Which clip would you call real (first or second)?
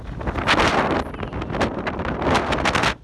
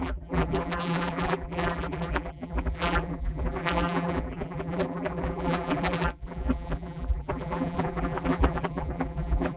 first